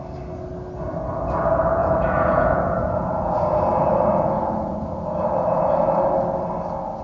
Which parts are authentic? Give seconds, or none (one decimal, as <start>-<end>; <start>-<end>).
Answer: 0.0-1.8; 6.0-7.0